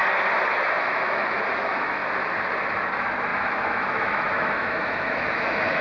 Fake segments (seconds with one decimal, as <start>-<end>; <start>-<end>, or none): 0.8-2.0; 2.9-5.8